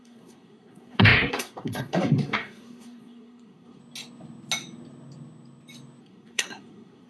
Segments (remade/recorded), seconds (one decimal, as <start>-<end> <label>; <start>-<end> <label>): 0.0-3.8 remade; 3.8-6.0 recorded; 6.0-7.1 remade